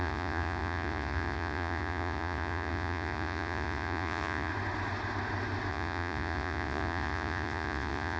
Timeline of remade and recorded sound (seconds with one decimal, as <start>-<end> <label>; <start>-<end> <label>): 0.0-4.5 remade; 4.5-5.7 recorded; 5.7-8.2 remade